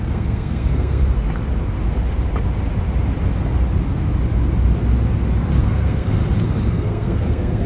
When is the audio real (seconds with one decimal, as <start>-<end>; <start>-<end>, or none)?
1.0-5.6; 6.2-6.7